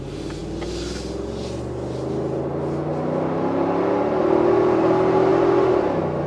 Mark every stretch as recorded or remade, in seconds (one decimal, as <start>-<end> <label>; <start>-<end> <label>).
0.0-6.3 recorded